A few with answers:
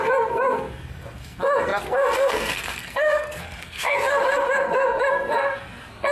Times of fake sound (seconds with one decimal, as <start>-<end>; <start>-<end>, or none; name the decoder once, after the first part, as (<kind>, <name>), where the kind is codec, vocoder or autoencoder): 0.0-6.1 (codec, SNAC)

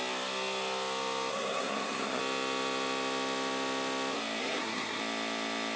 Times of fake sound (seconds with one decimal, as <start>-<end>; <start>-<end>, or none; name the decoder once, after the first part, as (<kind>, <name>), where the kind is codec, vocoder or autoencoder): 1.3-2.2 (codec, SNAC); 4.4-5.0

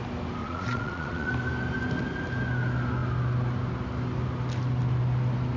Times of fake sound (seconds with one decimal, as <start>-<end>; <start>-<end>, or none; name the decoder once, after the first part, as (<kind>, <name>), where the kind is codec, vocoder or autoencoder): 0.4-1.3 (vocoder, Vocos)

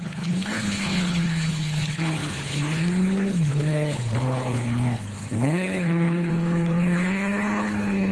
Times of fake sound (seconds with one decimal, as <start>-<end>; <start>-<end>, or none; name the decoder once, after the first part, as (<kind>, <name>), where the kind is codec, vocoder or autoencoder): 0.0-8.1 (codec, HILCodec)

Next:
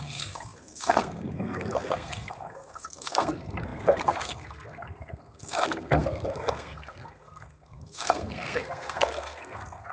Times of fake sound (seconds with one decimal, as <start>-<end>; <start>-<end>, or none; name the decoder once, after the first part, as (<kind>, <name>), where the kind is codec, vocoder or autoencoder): 0.0-9.9 (codec, SNAC)

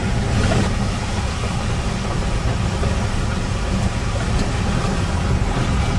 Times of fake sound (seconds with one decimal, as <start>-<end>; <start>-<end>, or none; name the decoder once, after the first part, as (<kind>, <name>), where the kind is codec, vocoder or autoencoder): 0.0-0.7 (vocoder, BigVGAN v2)